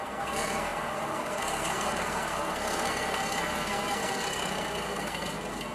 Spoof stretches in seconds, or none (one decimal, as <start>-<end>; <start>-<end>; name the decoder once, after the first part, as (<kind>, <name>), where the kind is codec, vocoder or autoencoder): 0.0-5.7 (codec, SNAC)